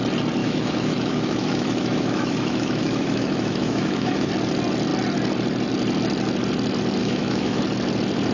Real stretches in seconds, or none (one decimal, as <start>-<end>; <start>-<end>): 0.0-0.4; 4.3-7.0; 7.6-8.3